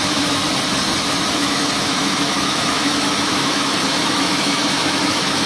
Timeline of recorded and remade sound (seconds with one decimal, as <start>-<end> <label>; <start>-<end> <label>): 0.0-0.4 remade; 0.4-1.3 recorded; 1.3-5.5 remade